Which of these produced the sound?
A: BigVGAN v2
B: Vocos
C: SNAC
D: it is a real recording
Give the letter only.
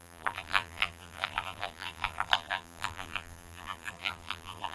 A